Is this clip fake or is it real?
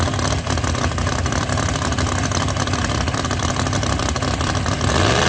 fake